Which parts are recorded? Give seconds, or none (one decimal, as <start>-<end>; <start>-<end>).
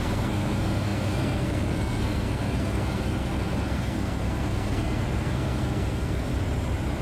6.3-7.0